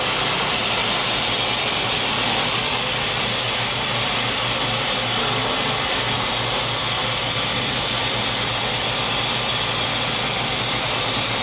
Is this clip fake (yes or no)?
no